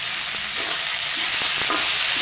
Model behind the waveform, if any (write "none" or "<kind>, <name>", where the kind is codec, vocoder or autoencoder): none